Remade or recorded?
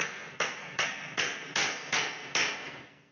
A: remade